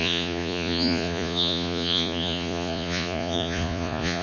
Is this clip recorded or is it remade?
remade